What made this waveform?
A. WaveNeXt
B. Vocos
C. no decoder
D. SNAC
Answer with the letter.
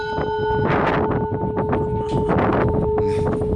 C